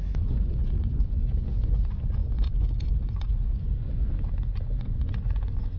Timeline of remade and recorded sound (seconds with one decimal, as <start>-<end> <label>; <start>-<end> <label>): 0.0-5.8 remade

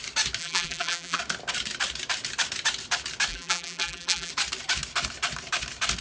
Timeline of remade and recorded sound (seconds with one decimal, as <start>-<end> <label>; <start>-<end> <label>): 0.0-0.4 recorded; 0.4-1.2 remade; 1.2-3.3 recorded; 3.3-4.3 remade; 4.3-6.0 recorded